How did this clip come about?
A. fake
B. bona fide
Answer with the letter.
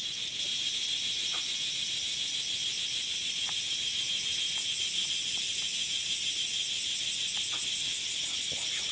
B